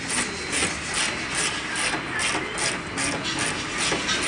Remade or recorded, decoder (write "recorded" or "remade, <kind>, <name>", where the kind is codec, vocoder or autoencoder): recorded